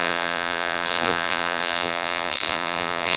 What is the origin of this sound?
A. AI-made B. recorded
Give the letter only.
A